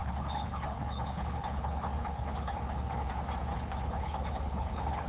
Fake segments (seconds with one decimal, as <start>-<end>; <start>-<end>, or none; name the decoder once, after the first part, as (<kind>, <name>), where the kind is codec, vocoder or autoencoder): 0.0-3.1 (codec, HILCodec); 3.5-5.1